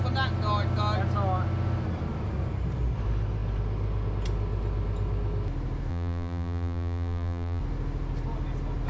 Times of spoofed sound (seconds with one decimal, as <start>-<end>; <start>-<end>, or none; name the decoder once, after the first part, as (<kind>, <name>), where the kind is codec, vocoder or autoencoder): 5.9-7.6 (vocoder, BigVGAN v2)